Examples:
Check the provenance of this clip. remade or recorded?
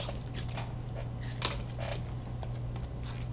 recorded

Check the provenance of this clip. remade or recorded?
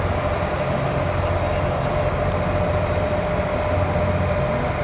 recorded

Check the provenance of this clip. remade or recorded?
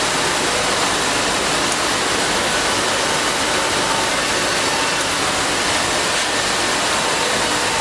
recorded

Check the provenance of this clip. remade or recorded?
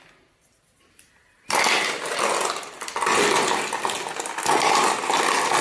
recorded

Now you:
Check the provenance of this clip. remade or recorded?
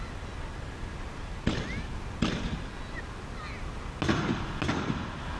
recorded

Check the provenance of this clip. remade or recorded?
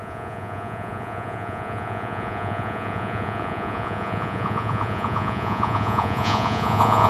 remade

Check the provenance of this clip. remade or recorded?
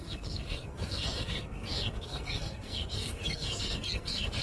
remade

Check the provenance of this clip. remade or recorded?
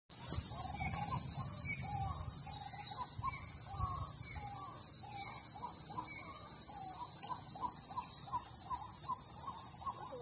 recorded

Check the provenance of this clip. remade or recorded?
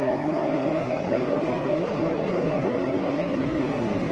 remade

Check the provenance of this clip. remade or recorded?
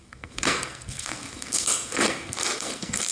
remade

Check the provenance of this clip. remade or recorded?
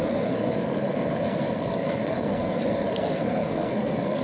remade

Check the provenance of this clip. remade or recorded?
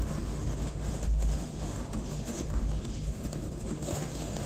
remade